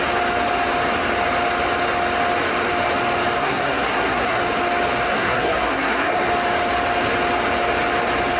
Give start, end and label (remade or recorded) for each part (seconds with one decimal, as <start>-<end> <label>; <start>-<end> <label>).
0.0-3.4 recorded; 3.4-4.4 remade; 4.4-5.1 recorded; 5.1-6.3 remade; 6.3-8.4 recorded